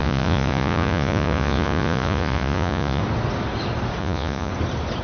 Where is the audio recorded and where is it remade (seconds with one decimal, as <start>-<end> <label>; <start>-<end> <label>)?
0.0-3.0 remade; 3.0-4.0 recorded; 4.0-4.5 remade; 4.5-5.0 recorded